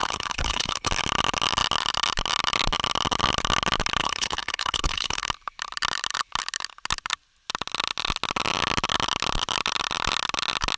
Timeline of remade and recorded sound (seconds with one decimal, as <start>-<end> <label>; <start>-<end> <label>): 0.0-0.9 remade; 0.9-4.0 recorded; 4.0-5.3 remade; 5.3-10.8 recorded